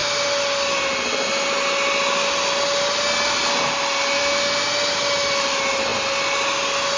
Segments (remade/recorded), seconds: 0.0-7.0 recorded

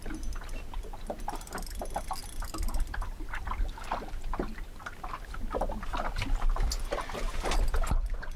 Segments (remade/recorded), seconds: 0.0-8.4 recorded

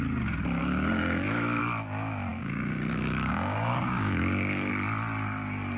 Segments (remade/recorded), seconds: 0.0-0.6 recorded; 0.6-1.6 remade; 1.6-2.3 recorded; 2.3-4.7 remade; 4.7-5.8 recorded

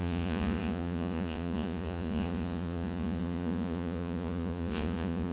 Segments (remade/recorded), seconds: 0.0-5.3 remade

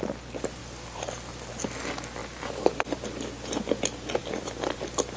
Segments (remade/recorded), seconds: 0.0-0.6 recorded; 0.6-1.5 remade; 1.5-4.2 recorded; 4.2-5.2 remade